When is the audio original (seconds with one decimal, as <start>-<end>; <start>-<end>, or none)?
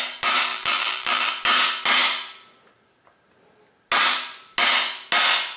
0.0-0.5; 1.3-5.6